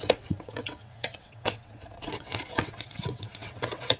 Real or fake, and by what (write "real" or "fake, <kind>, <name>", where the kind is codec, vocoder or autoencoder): fake, vocoder, WaveNeXt